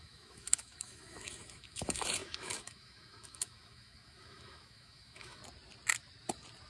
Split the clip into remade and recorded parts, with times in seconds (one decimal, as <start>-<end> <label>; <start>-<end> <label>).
0.0-5.4 remade; 5.4-6.7 recorded